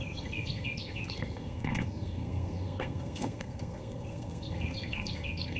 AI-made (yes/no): yes